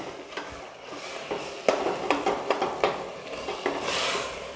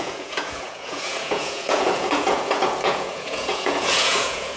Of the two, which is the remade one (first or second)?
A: second